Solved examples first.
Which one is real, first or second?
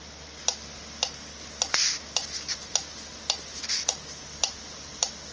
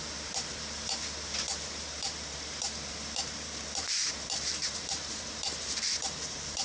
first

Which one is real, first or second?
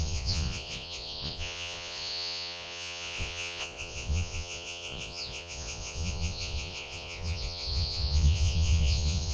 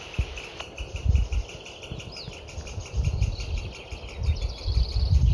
second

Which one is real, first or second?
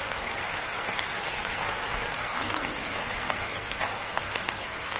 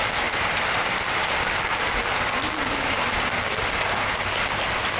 second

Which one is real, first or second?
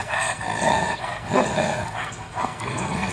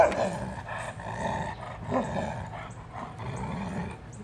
second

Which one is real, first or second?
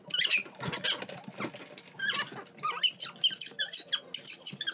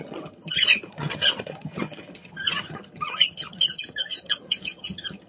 first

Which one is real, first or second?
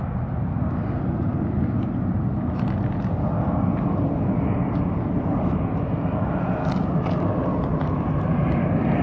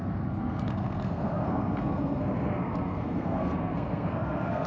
first